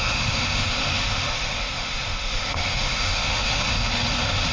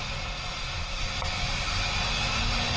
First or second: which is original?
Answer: second